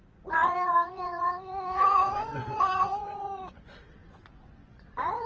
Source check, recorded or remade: remade